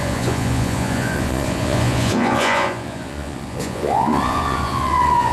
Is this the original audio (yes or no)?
no